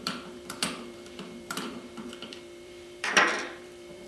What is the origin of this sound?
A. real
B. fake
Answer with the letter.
B